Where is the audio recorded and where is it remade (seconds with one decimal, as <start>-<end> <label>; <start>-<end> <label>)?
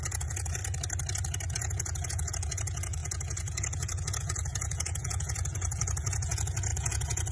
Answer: 0.0-0.6 remade; 0.6-1.5 recorded; 1.5-7.3 remade